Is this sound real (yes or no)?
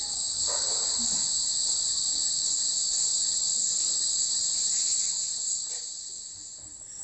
yes